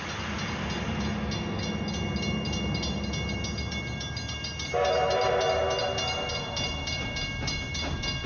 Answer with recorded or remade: recorded